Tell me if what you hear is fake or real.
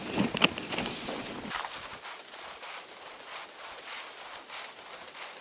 real